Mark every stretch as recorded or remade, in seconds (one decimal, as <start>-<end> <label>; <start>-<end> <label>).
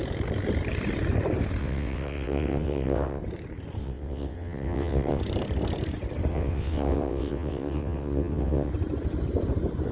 0.0-1.6 recorded; 1.6-3.2 remade; 3.2-3.8 recorded; 3.8-5.2 remade; 5.2-6.3 recorded; 6.3-8.7 remade; 8.7-9.9 recorded